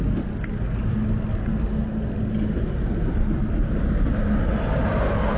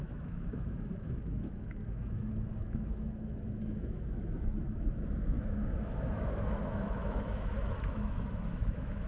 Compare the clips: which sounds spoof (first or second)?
second